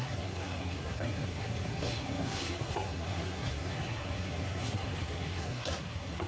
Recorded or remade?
remade